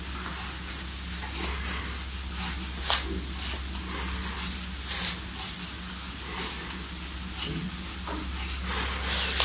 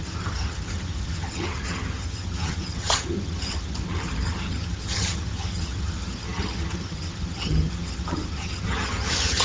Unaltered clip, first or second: first